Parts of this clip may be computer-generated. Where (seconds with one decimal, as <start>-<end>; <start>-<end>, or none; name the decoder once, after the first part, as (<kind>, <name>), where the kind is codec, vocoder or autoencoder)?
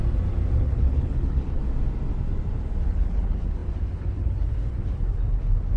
0.6-1.6 (codec, HILCodec); 2.8-5.8